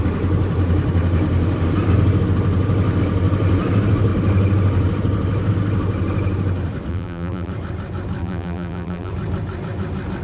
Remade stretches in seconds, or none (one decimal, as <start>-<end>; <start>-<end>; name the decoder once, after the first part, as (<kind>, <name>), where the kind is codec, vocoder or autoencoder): 6.9-7.5 (vocoder, BigVGAN v2); 8.2-9.1